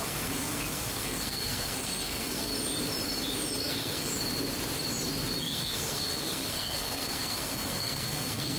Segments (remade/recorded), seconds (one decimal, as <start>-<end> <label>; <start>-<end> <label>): 0.0-2.5 remade; 2.5-3.6 recorded; 3.6-4.1 remade; 4.1-5.4 recorded; 5.4-8.6 remade